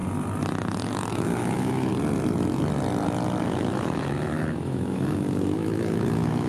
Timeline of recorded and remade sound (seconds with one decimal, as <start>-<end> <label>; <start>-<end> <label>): 0.0-1.1 recorded; 1.1-1.9 remade; 1.9-3.4 recorded; 3.4-6.5 remade